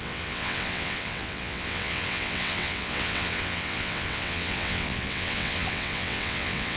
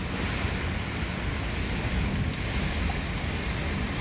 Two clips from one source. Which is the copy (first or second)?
first